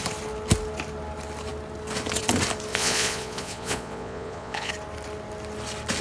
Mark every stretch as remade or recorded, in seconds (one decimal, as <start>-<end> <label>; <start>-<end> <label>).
0.0-2.7 recorded; 2.7-4.7 remade; 4.7-6.0 recorded